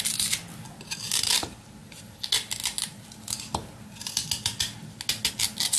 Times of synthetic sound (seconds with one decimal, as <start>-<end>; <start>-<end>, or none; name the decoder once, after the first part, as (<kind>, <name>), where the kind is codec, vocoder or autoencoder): none